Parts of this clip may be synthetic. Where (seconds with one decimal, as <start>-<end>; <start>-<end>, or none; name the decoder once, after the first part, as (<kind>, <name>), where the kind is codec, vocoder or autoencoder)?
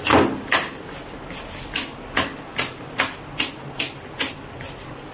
none